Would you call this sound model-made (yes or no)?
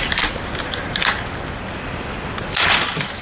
no